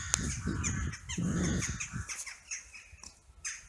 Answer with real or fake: real